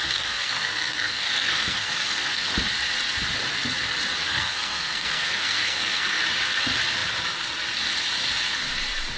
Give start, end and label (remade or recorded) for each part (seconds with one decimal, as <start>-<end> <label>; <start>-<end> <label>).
0.0-2.5 remade; 2.5-4.2 recorded; 4.2-6.2 remade; 6.2-9.2 recorded